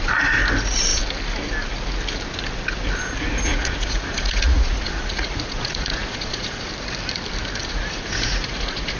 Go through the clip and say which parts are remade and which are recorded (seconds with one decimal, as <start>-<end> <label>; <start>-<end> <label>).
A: 0.0-3.5 recorded; 3.5-6.7 remade; 6.7-7.6 recorded; 7.6-9.0 remade